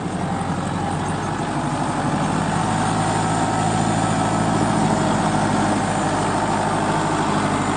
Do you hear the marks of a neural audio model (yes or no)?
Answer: no